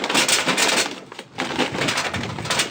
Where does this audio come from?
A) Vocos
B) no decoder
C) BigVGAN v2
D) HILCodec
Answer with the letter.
B